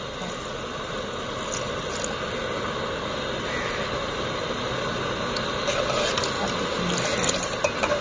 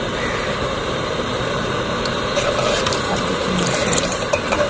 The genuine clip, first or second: first